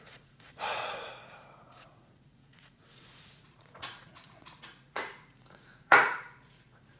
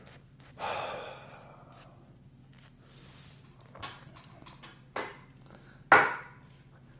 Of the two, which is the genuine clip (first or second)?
second